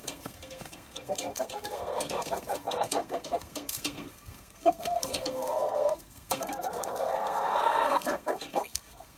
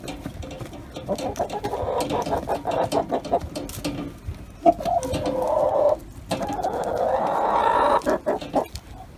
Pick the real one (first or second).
second